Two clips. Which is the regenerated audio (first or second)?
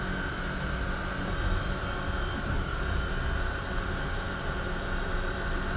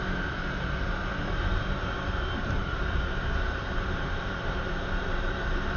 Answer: second